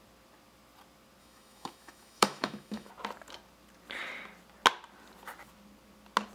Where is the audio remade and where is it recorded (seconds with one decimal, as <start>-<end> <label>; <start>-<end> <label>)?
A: 0.0-1.2 recorded; 1.2-2.9 remade; 2.9-6.3 recorded